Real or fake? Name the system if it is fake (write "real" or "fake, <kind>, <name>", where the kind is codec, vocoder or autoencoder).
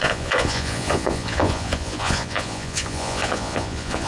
fake, vocoder, Vocos